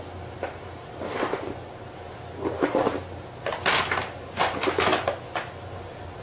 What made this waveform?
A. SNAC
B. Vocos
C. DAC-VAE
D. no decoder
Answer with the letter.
D